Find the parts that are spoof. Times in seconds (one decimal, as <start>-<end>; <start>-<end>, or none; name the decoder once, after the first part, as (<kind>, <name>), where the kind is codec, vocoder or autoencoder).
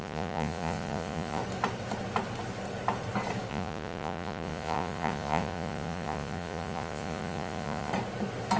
0.0-1.4 (vocoder, Vocos); 3.5-7.9